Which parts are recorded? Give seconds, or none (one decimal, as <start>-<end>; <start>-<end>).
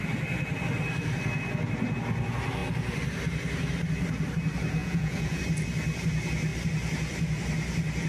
0.0-4.8; 5.4-8.1